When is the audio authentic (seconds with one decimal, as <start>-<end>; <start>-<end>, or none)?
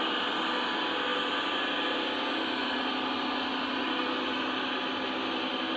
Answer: 0.0-5.8